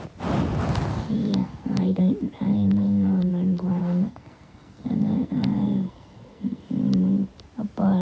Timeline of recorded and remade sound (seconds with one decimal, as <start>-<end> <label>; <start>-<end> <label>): 0.0-0.9 recorded; 0.9-2.0 remade; 2.0-2.5 recorded; 2.5-3.3 remade; 3.3-3.8 recorded; 3.8-6.6 remade; 6.6-8.0 recorded